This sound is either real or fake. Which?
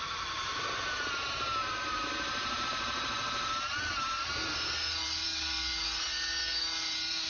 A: fake